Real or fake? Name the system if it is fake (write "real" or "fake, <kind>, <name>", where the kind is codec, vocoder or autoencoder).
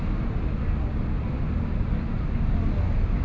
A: real